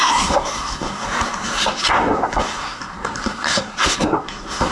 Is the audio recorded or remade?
remade